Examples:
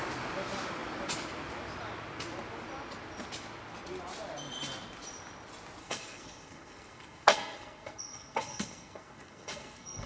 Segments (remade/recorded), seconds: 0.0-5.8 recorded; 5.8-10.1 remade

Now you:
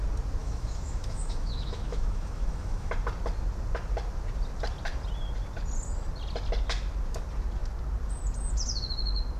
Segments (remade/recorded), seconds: 0.0-0.4 recorded; 0.4-2.9 remade; 2.9-9.4 recorded

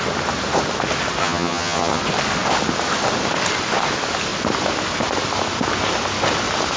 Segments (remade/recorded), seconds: 0.0-1.2 recorded; 1.2-2.0 remade; 2.0-6.8 recorded

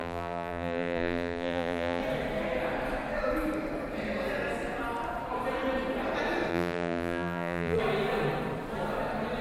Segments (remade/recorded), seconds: 0.0-2.0 remade; 2.0-6.5 recorded; 6.5-7.8 remade; 7.8-9.4 recorded

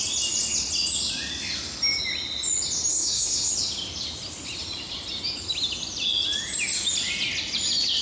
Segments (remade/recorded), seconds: 0.0-2.9 recorded; 2.9-3.5 remade; 3.5-8.0 recorded

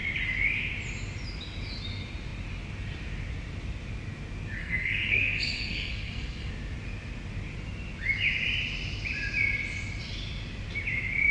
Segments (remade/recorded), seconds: 0.0-4.6 recorded; 4.6-6.5 remade; 6.5-11.3 recorded

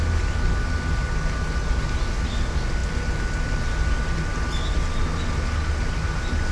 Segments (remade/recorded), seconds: 0.0-6.5 recorded

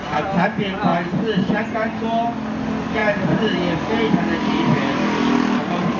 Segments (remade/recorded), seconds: 0.0-6.0 recorded